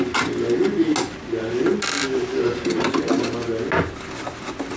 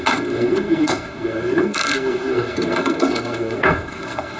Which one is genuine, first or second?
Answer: first